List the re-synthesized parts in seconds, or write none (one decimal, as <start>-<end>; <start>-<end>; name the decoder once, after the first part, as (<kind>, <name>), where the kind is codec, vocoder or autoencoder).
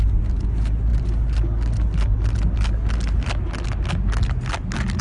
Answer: none